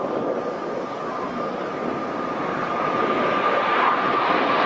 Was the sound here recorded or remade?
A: recorded